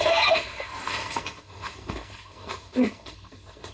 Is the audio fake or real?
fake